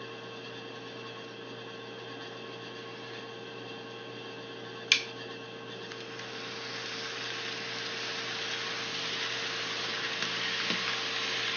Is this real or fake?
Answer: real